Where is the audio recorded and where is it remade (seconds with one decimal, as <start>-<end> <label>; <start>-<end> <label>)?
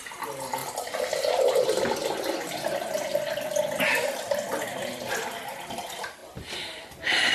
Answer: 0.0-0.6 recorded; 0.6-3.6 remade; 3.6-4.7 recorded; 4.7-5.3 remade; 5.3-6.2 recorded; 6.2-6.8 remade; 6.8-7.3 recorded